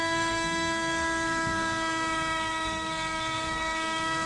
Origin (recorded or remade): remade